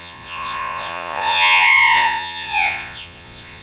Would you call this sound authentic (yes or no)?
no